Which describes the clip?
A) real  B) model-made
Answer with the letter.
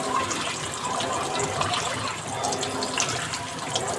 A